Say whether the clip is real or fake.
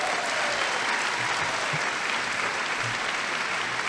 fake